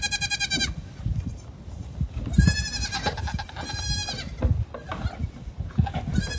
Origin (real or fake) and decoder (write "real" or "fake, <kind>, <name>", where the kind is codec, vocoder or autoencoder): real